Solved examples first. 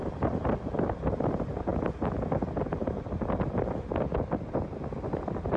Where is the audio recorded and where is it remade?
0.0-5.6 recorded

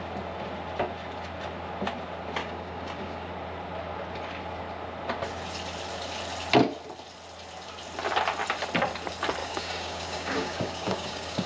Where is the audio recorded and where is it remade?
0.0-2.4 recorded; 2.4-3.3 remade; 3.3-9.4 recorded; 9.4-11.5 remade